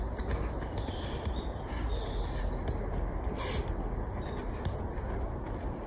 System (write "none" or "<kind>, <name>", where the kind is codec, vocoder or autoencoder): none